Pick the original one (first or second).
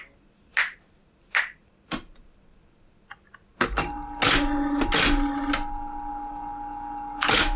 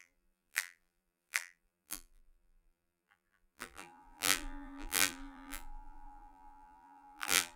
first